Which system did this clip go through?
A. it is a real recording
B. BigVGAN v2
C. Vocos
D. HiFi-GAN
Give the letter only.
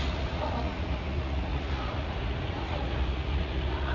C